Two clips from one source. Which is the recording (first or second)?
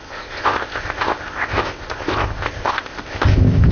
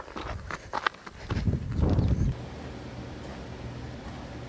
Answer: second